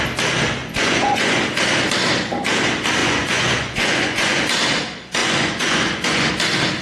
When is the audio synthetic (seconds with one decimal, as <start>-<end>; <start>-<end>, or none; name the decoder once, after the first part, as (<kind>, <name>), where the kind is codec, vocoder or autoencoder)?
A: 0.6-1.4 (vocoder, Vocos); 3.0-4.4; 5.2-6.3